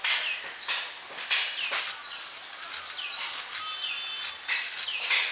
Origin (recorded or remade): recorded